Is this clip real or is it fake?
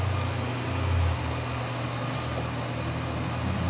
real